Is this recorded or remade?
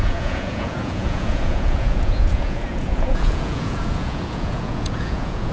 remade